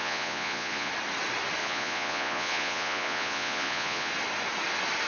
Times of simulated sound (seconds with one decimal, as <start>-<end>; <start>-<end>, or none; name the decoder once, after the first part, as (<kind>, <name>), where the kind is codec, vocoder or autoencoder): 0.0-0.9 (vocoder, Vocos); 1.6-4.1